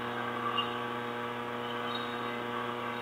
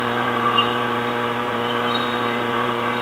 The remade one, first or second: second